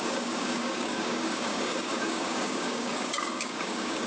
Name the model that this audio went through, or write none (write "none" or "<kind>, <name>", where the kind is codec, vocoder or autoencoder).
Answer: codec, DAC